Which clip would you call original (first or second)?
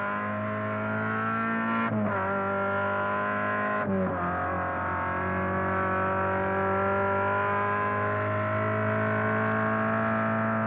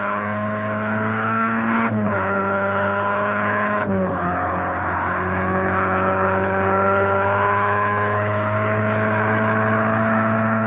first